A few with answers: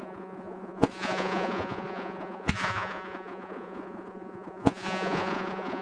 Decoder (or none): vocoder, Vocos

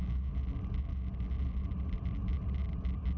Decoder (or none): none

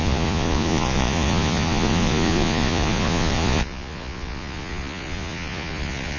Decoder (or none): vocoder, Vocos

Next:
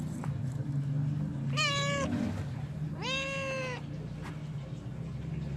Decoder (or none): none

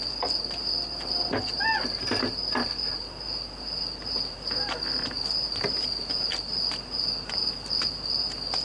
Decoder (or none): none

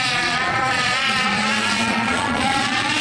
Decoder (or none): vocoder, Vocos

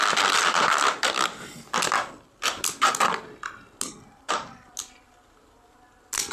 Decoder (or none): none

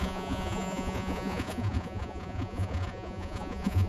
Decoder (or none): vocoder, Vocos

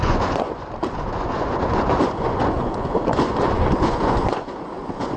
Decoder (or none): vocoder, Vocos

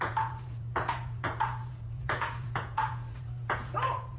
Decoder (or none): vocoder, Vocos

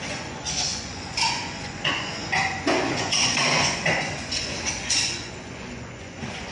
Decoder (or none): vocoder, Vocos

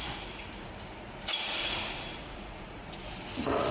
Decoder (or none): vocoder, Vocos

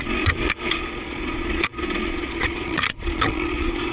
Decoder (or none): vocoder, Vocos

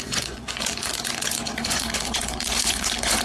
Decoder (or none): vocoder, Vocos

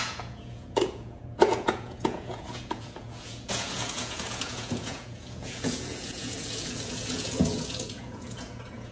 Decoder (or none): vocoder, Vocos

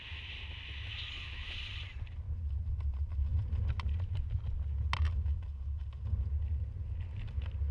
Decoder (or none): none